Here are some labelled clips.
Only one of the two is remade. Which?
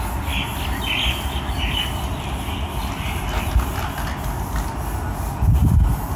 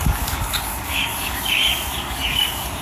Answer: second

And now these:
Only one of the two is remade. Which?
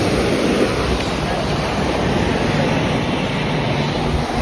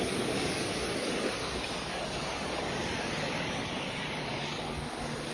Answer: second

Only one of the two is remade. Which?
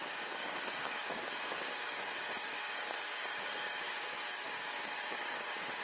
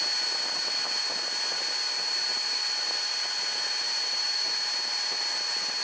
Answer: first